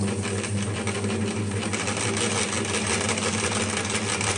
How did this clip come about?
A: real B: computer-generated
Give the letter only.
A